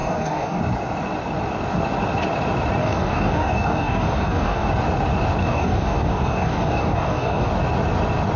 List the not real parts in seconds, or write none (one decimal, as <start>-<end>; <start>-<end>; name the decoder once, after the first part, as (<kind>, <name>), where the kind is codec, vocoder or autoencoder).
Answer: 0.0-0.6 (codec, DAC); 2.8-4.7; 5.4-7.5